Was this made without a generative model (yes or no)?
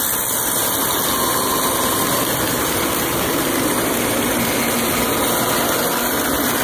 yes